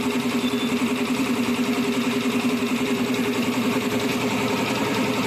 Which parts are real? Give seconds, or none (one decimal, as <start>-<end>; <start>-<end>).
1.5-2.5; 4.1-4.6